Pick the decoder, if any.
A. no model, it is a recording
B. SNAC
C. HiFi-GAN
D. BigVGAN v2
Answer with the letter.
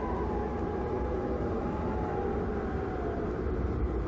A